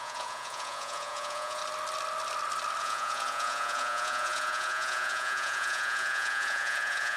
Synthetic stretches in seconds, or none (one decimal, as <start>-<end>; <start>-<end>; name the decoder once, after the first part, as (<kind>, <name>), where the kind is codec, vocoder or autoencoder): 0.0-1.6 (vocoder, Vocos); 2.8-7.2